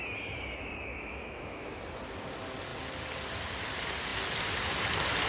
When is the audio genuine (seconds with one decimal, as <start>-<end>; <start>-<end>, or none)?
0.0-0.9; 1.8-5.3